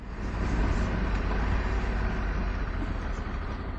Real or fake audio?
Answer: real